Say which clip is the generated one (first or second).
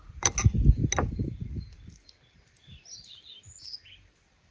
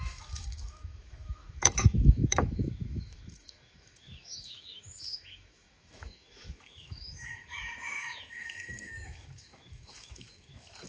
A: second